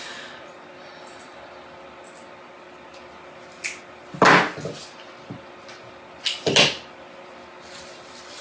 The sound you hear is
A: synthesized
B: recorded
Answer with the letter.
B